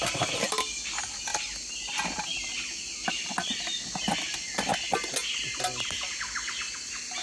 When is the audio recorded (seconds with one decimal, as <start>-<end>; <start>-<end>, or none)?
0.0-7.2